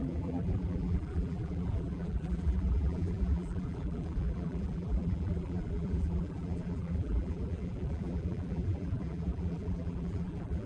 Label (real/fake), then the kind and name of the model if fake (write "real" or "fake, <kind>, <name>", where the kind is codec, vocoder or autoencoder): fake, vocoder, BigVGAN v2